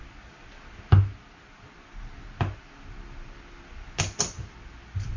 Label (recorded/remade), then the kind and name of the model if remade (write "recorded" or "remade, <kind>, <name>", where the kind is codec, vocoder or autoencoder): recorded